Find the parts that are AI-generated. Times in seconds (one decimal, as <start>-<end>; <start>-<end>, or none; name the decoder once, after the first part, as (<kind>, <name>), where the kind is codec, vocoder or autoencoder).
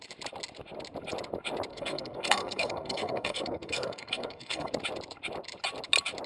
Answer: 1.7-4.7 (codec, SNAC)